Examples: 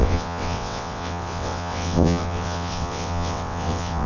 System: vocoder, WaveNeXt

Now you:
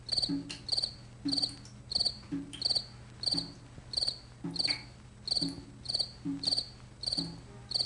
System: none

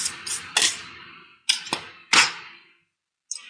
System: none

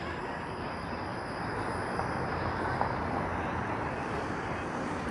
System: none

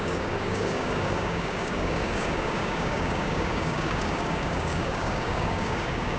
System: codec, DAC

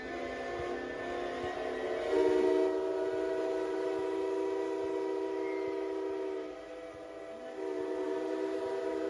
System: none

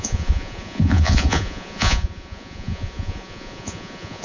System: vocoder, Vocos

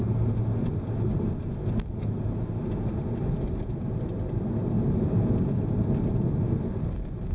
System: none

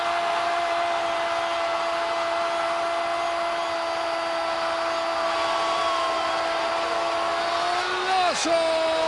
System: none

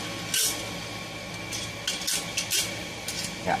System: none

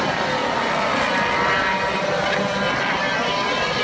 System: none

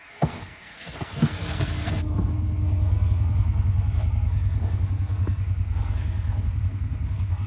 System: codec, SNAC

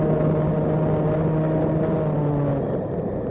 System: none